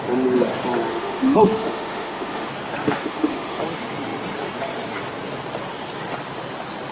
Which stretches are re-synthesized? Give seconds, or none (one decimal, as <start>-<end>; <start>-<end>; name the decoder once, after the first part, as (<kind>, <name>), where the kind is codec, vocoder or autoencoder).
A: 0.9-2.5 (autoencoder, DAC-VAE); 3.0-3.6